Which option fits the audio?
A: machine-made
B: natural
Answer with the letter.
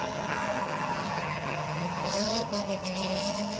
A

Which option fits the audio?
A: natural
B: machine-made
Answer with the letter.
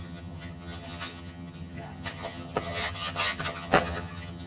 B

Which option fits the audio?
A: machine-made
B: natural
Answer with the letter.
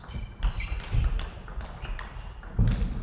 B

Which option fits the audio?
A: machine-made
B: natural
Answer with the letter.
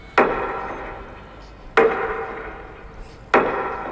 B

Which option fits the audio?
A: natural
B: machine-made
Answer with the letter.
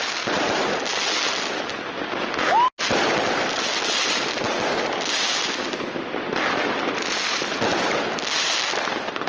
A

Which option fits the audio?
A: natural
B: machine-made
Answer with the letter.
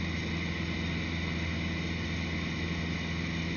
A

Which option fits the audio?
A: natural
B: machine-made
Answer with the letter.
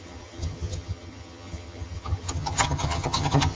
B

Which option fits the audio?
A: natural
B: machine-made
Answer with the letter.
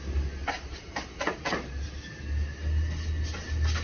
A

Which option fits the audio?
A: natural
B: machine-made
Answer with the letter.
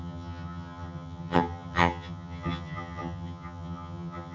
B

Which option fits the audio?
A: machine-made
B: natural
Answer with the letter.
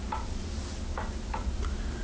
B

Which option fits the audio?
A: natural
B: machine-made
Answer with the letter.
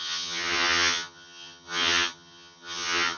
B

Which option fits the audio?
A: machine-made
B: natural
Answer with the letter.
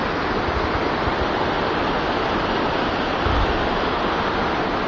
B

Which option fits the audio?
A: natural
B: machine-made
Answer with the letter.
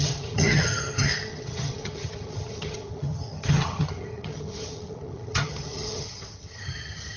B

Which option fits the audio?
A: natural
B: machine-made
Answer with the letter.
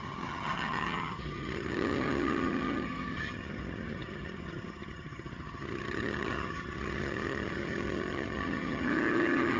B